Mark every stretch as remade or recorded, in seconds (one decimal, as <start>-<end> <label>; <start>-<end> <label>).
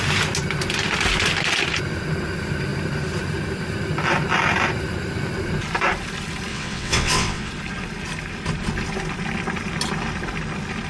0.0-6.5 recorded; 6.5-7.5 remade; 7.5-10.9 recorded